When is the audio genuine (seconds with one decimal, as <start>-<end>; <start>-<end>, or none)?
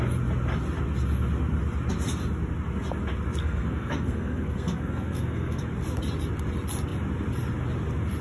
0.0-3.4; 5.6-8.2